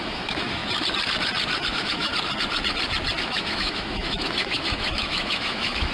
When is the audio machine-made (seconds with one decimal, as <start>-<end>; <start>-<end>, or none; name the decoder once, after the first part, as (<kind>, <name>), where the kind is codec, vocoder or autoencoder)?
0.0-0.6 (autoencoder, DAC-VAE); 1.7-2.1; 3.2-5.9